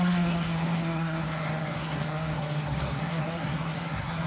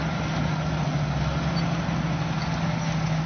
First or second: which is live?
second